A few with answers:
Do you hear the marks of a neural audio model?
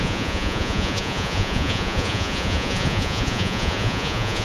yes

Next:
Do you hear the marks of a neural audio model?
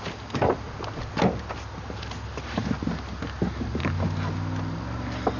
no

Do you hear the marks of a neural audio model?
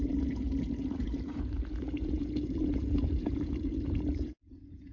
yes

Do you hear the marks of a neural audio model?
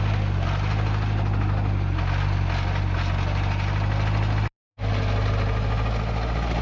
no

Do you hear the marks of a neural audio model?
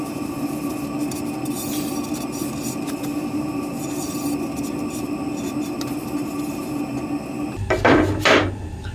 no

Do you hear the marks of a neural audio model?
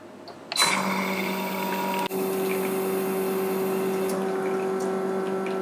no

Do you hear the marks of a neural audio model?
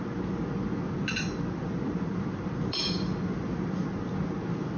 no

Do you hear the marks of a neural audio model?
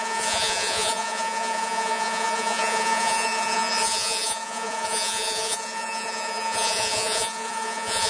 yes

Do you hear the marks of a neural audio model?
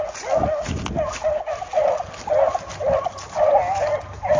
no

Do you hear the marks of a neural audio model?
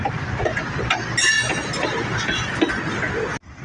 no